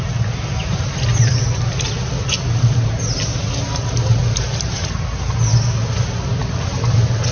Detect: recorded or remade recorded